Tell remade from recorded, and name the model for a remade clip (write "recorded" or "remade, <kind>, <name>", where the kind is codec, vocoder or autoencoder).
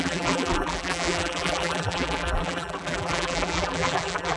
remade, vocoder, BigVGAN v2